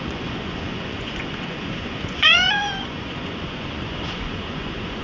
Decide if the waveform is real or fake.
fake